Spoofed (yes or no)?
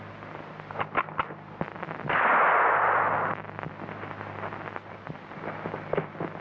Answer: no